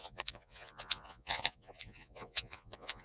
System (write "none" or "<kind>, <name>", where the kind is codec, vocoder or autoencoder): vocoder, Vocos